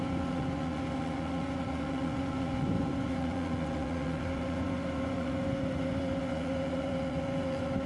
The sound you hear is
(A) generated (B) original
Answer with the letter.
A